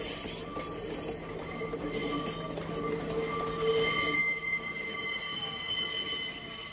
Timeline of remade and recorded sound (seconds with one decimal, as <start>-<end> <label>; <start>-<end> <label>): 0.0-4.2 recorded; 4.2-5.7 remade; 5.7-6.7 recorded